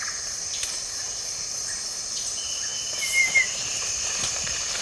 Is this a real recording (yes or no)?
no